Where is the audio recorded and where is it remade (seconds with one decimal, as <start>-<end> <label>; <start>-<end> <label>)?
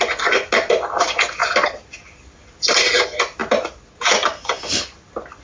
0.0-5.4 recorded